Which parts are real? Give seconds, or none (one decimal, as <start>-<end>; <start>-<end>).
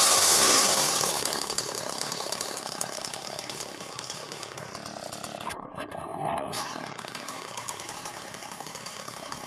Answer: 4.7-5.5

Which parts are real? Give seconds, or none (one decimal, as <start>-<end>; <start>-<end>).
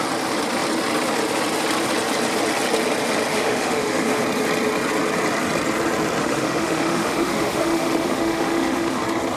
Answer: 0.0-3.3; 4.2-6.2; 9.0-9.4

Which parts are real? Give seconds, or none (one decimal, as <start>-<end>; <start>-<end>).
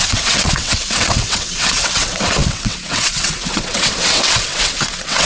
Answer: none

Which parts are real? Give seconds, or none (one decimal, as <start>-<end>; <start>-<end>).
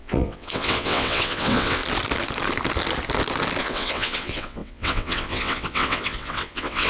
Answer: 1.8-3.6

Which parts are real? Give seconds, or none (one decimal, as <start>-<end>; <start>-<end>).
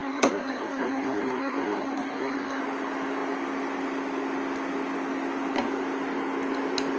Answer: 2.6-7.0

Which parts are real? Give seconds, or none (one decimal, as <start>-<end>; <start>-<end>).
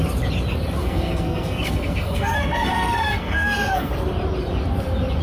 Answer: 0.0-0.8; 3.9-5.2